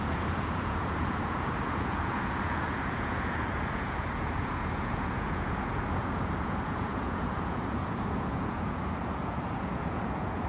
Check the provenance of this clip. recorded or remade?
remade